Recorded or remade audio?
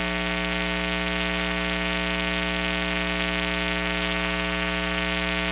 recorded